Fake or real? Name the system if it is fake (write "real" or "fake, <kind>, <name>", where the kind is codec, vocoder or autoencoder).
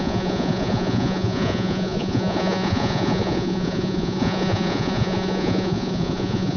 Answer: fake, vocoder, Vocos